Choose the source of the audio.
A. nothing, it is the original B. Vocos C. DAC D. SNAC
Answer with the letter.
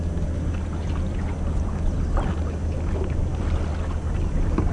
A